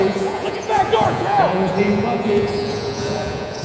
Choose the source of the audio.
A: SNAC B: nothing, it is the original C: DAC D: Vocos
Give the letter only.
D